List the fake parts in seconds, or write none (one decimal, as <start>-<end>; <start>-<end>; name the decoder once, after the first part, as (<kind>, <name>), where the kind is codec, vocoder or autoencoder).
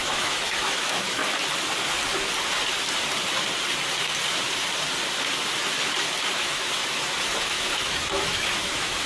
0.0-1.2 (autoencoder, DAC-VAE); 6.3-6.8; 7.4-9.1